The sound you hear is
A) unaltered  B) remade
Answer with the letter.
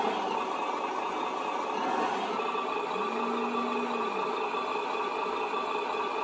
A